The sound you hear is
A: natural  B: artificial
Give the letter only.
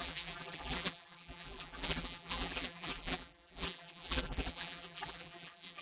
B